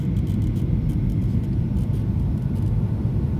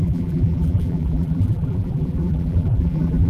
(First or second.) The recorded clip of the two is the first